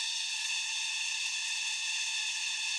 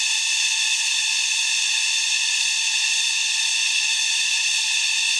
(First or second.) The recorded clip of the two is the second